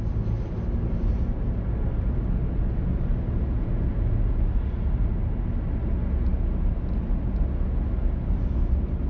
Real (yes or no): yes